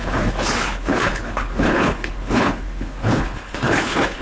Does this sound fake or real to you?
fake